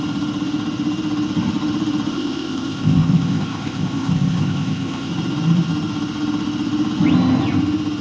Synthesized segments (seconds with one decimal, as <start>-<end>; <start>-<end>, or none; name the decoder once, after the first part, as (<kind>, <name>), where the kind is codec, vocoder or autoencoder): 2.1-5.1 (codec, ZipCodec)

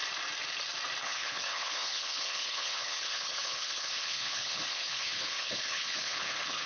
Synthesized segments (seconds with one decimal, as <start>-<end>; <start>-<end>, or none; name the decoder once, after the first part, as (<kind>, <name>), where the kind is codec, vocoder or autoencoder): 1.0-6.7 (codec, HILCodec)

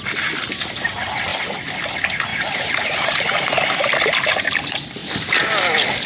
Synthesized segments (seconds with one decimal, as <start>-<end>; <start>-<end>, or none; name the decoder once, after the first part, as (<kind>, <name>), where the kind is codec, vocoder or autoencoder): 2.3-3.9 (vocoder, BigVGAN v2)

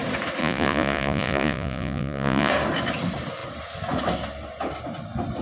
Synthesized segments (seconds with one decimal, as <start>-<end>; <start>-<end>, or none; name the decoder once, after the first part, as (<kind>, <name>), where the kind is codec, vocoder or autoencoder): 0.4-2.5 (vocoder, Vocos)

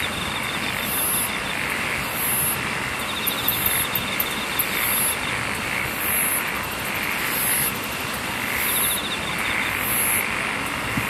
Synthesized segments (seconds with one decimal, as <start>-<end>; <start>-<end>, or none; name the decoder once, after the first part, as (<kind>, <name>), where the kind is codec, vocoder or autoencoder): none

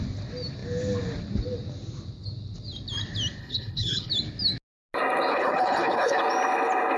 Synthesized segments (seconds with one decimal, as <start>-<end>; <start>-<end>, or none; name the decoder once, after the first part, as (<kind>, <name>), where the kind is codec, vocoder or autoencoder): 3.4-4.1 (codec, HILCodec); 5.3-6.2

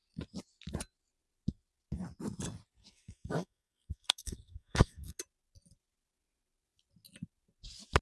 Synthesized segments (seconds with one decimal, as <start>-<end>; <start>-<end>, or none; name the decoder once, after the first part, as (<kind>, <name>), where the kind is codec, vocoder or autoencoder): 2.8-5.2 (codec, SNAC)

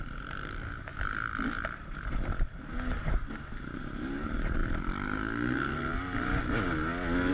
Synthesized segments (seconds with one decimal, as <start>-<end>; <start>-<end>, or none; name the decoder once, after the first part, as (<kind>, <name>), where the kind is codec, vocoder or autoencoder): none